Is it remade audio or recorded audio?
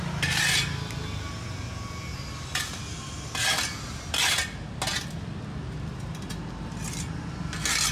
recorded